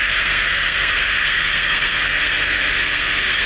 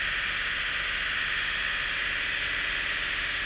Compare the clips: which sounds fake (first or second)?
first